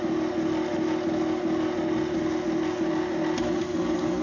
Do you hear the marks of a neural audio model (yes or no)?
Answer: no